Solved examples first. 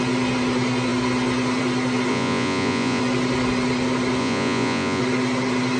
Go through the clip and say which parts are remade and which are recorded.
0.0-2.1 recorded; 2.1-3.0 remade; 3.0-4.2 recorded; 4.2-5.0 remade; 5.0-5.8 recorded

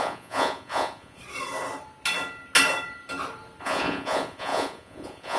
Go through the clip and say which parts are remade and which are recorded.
0.0-1.2 remade; 1.2-3.6 recorded; 3.6-5.4 remade